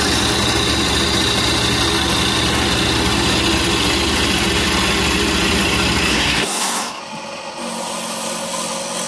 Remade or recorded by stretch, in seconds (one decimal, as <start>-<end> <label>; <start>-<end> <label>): 0.0-6.1 recorded; 6.1-7.0 remade; 7.0-9.1 recorded